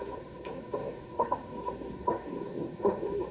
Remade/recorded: remade